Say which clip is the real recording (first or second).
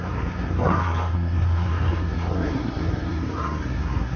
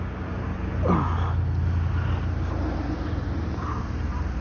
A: second